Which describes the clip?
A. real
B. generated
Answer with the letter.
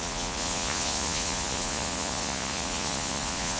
B